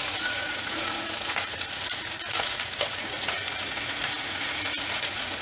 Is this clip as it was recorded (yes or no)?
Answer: no